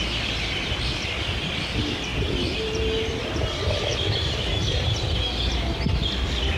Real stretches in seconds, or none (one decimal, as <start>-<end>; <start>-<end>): 0.0-3.9; 5.0-6.6